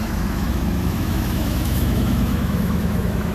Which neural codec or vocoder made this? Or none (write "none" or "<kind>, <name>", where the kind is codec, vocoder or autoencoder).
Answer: autoencoder, DAC-VAE